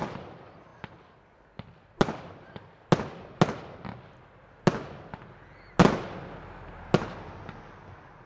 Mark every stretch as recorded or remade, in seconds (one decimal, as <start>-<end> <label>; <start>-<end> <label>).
0.0-8.3 recorded

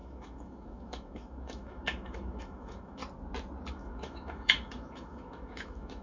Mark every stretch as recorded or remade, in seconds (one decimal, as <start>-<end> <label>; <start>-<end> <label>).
0.0-3.0 remade; 3.0-3.7 recorded; 3.7-6.0 remade

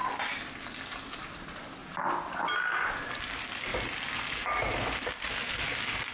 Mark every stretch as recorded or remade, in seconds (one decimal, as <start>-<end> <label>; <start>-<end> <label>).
0.0-6.1 recorded

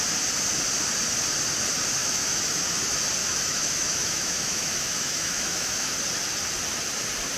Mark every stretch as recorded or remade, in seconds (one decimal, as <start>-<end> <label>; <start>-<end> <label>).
0.0-2.0 recorded; 2.0-2.8 remade; 2.8-3.2 recorded; 3.2-5.9 remade; 5.9-7.4 recorded

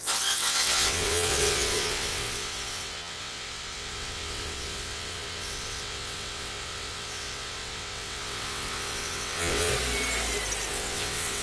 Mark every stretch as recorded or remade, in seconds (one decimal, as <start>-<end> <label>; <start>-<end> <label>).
0.0-9.7 remade; 9.7-10.7 recorded; 10.7-11.4 remade

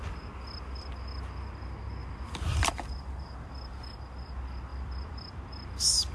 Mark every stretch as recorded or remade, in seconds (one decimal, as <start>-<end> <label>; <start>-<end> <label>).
0.0-2.0 recorded; 2.0-3.5 remade; 3.5-4.7 recorded; 4.7-5.4 remade; 5.4-6.1 recorded

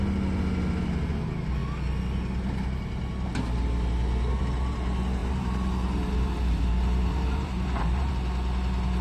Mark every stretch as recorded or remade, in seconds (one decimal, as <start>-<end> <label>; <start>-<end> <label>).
0.0-5.2 recorded; 5.2-8.1 remade; 8.1-9.0 recorded

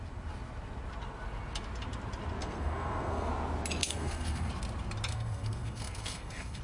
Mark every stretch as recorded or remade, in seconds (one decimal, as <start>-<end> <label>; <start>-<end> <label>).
0.0-2.4 recorded; 2.4-3.3 remade; 3.3-3.8 recorded; 3.8-4.5 remade; 4.5-5.1 recorded; 5.1-6.6 remade